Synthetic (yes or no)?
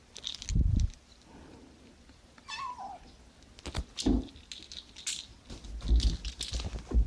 no